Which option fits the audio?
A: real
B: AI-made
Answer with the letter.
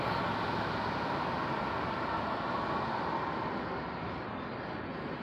A